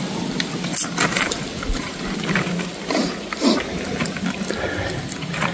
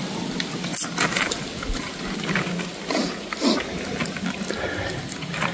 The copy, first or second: first